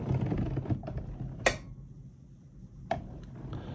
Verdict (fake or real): real